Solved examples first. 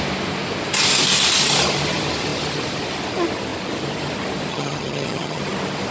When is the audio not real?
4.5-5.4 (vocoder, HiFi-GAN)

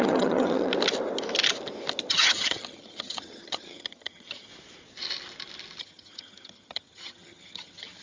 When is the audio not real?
0.0-0.7 (vocoder, HiFi-GAN); 2.1-4.5; 5.8-8.0